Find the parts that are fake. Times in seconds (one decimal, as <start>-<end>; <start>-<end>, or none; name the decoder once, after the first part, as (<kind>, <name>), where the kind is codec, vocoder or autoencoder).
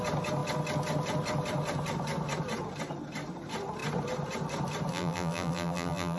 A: 4.9-6.2 (vocoder, BigVGAN v2)